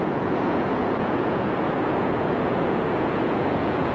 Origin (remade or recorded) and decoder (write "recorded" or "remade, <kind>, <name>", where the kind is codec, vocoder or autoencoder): remade, vocoder, Vocos